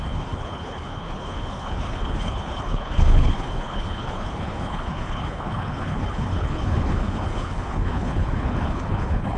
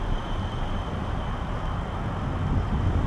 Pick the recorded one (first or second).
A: second